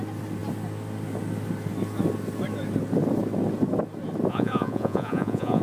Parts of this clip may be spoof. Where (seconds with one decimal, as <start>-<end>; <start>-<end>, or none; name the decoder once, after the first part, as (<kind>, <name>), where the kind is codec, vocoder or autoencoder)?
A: 4.3-5.6 (vocoder, Vocos)